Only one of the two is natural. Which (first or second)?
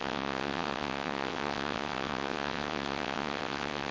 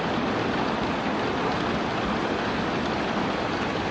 second